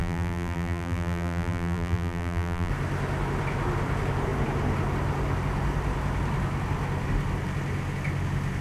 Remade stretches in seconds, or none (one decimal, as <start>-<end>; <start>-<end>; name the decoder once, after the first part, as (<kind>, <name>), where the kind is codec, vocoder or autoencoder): 0.0-2.7 (vocoder, BigVGAN v2)